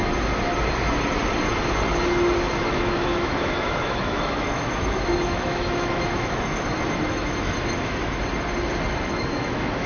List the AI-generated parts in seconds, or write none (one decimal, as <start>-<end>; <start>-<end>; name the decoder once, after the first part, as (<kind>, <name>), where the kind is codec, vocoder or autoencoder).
2.6-8.2 (autoencoder, DAC-VAE); 8.9-9.9